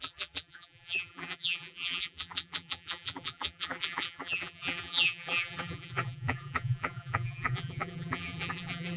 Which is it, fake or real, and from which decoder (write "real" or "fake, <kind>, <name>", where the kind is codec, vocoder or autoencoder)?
fake, vocoder, BigVGAN v2